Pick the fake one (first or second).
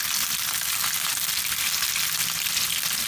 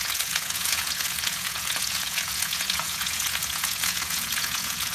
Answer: second